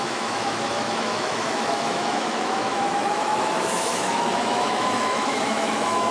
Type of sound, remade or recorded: remade